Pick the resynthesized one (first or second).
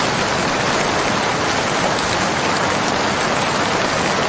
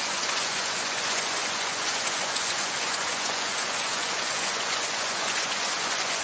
second